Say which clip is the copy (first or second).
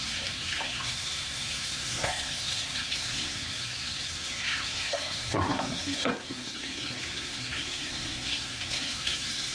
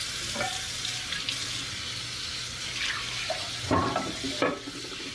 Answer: first